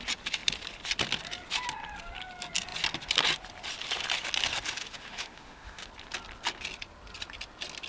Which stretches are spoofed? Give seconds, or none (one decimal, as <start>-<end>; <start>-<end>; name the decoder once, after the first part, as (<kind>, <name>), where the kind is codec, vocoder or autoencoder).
4.8-5.9 (autoencoder, DAC-VAE)

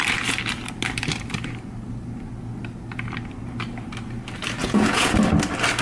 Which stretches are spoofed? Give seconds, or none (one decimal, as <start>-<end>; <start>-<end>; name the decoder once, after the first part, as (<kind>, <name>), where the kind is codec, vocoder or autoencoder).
4.6-5.1 (vocoder, Vocos)